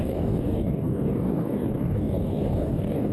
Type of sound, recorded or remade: remade